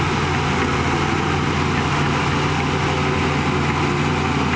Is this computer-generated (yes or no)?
no